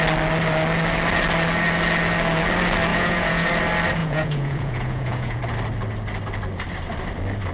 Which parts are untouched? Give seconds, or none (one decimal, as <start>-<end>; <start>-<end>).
0.0-2.9; 3.5-4.0; 5.4-7.5